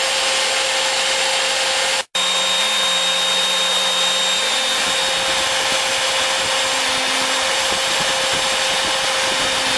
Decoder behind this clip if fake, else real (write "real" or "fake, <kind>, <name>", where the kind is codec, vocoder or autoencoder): real